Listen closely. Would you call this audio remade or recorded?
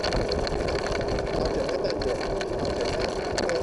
recorded